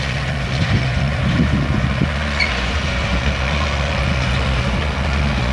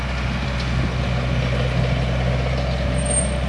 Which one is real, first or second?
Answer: second